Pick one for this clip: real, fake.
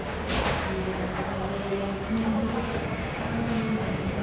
fake